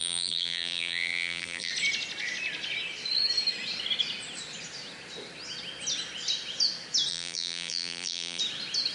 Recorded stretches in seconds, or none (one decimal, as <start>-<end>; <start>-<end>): 1.7-7.1; 8.4-8.9